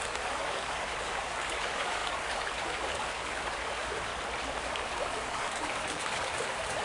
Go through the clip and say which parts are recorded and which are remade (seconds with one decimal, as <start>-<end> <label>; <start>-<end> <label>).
0.0-4.1 remade; 4.1-4.6 recorded; 4.6-6.8 remade